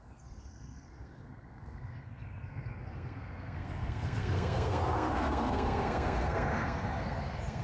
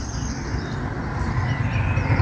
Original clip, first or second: second